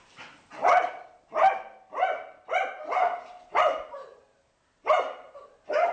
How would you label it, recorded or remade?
recorded